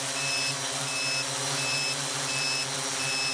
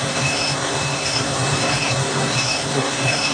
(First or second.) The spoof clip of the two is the second